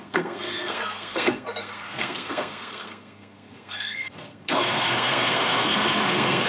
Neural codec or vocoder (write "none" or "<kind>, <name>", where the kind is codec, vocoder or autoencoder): codec, SNAC